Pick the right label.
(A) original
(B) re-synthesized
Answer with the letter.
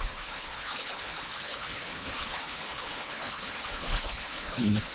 B